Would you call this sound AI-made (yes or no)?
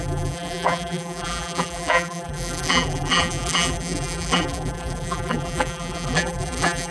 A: yes